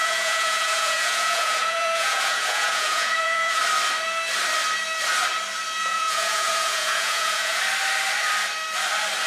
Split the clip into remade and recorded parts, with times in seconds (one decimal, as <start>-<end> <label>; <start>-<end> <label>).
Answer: 0.0-3.6 remade; 3.6-5.8 recorded; 5.8-7.6 remade; 7.6-9.3 recorded